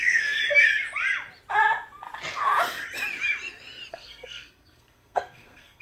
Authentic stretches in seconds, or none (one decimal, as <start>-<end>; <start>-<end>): 0.4-3.9